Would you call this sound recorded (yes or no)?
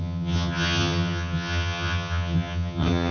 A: no